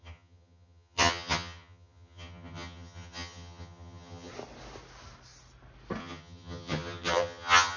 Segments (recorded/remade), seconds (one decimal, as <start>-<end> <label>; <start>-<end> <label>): 0.0-4.3 remade; 4.3-6.0 recorded; 6.0-7.8 remade